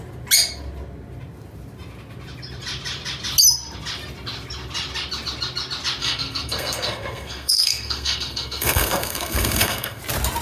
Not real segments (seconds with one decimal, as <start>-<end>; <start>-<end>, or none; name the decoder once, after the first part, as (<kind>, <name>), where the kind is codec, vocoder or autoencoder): 6.0-10.0 (codec, SNAC)